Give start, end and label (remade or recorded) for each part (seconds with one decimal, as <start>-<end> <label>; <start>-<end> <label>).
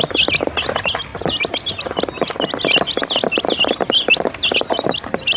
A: 0.0-5.4 recorded